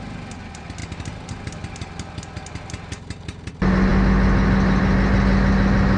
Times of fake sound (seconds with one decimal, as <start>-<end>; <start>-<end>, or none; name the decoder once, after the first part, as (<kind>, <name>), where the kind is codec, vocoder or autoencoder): none